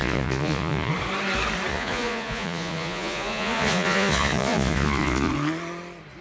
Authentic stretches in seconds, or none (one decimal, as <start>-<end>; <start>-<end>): 0.9-1.7; 5.3-6.2